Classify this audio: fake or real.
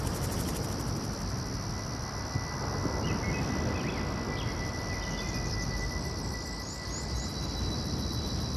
real